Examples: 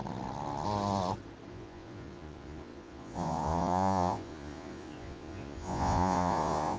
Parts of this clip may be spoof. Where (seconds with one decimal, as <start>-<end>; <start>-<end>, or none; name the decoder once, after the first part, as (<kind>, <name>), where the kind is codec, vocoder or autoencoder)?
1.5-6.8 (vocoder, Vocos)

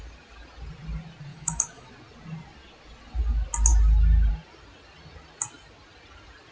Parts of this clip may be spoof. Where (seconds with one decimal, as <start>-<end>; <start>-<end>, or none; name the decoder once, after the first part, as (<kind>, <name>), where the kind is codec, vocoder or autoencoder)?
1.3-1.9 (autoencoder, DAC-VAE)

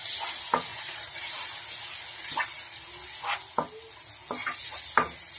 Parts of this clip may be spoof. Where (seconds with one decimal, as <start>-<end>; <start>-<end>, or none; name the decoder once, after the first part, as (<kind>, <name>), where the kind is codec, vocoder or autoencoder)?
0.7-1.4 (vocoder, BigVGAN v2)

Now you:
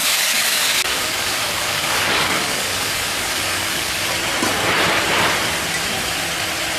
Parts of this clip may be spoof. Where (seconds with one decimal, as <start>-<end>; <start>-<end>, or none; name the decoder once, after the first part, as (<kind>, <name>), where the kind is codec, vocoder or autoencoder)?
0.0-4.1 (codec, DAC)